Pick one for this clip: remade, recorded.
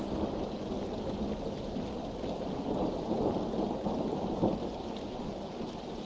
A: recorded